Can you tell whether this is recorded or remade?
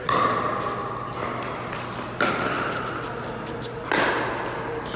recorded